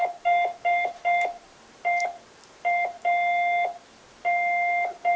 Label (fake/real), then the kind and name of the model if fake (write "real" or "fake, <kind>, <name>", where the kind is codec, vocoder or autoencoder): real